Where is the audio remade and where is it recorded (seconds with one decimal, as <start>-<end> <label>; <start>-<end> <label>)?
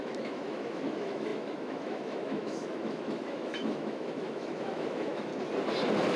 0.0-5.3 remade; 5.3-6.2 recorded